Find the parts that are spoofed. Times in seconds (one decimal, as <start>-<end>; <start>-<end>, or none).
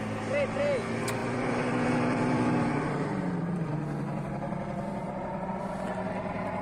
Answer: 1.2-3.7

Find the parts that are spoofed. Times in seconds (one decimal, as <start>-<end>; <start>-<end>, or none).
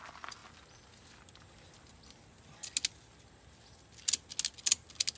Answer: none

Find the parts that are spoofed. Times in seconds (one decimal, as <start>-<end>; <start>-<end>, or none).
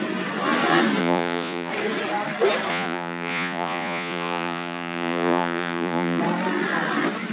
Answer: 1.0-1.7; 2.7-6.2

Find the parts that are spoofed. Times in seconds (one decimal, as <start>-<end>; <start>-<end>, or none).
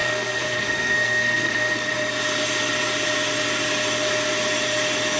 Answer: 0.0-1.9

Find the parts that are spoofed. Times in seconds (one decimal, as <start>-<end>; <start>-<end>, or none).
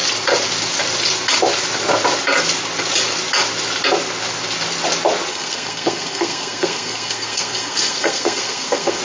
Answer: 5.3-9.0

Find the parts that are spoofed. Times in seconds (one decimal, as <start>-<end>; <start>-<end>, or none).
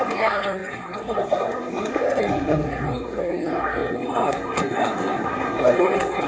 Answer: 0.0-6.3